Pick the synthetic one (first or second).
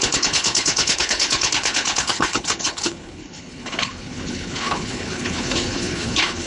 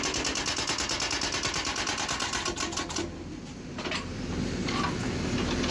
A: first